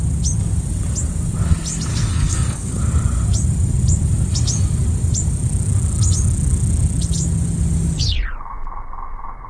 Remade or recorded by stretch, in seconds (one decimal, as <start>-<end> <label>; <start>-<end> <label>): 0.0-1.9 recorded; 1.9-2.8 remade; 2.8-9.5 recorded